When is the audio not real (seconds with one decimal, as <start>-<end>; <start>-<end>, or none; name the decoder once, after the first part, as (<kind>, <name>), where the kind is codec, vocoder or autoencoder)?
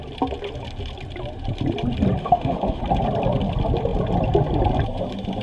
2.2-2.8 (autoencoder, DAC-VAE)